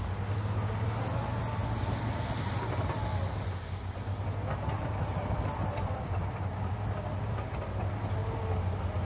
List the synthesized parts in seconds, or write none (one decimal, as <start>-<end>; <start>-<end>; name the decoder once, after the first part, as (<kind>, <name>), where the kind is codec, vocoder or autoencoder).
none